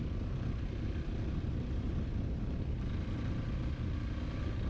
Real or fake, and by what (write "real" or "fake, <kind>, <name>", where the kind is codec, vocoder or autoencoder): real